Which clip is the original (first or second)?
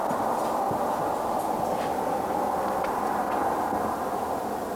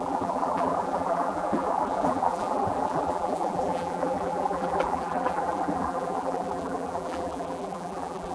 first